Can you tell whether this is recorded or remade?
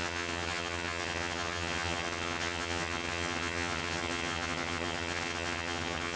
remade